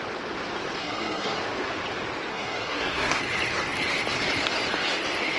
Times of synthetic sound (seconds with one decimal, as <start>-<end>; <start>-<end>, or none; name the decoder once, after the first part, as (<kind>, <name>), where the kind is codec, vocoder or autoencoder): 0.8-1.4 (codec, SNAC); 2.3-3.2